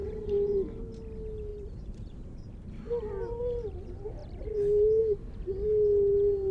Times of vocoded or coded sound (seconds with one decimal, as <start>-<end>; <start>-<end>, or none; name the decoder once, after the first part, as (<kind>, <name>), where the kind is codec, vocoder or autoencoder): 1.5-2.5 (vocoder, BigVGAN v2)